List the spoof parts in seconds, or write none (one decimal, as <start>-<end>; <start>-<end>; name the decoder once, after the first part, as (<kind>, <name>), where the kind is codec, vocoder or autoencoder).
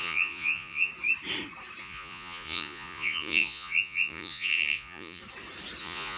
0.0-0.9 (vocoder, Vocos); 1.8-5.2; 5.8-6.2